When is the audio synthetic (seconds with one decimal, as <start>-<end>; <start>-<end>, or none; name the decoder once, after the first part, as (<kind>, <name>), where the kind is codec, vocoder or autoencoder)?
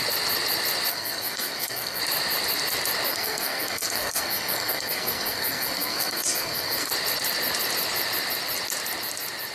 0.9-2.0 (codec, SNAC); 3.1-6.9